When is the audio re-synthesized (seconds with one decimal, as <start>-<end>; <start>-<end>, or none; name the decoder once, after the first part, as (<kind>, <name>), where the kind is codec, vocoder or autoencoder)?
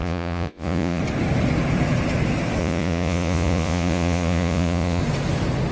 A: 0.0-1.0 (vocoder, Vocos); 2.6-5.0